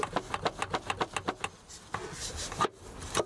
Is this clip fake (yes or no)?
no